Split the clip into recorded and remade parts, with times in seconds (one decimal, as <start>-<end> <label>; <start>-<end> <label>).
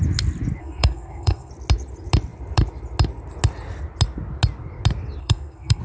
0.0-0.6 recorded; 0.6-1.5 remade; 1.5-5.2 recorded; 5.2-5.8 remade